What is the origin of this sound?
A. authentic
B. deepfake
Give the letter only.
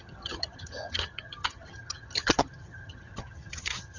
B